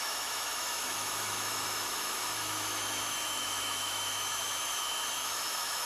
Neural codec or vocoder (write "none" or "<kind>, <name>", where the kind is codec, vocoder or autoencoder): autoencoder, DAC-VAE